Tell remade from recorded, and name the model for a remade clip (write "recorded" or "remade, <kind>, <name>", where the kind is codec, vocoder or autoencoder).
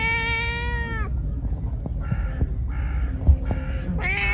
recorded